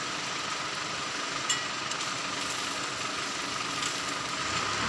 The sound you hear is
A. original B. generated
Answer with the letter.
A